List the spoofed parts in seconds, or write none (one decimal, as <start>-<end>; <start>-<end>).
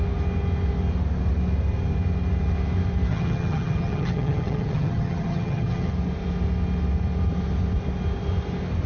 3.1-5.9